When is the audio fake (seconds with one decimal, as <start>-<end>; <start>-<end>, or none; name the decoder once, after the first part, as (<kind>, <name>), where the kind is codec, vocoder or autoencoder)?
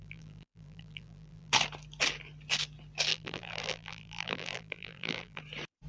0.0-1.5 (vocoder, BigVGAN v2); 3.1-5.4